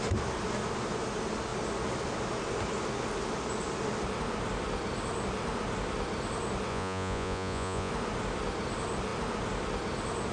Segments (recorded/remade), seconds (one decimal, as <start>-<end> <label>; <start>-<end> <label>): 0.0-6.7 recorded; 6.7-7.9 remade; 7.9-10.3 recorded